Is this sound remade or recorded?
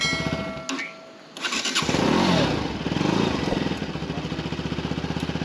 recorded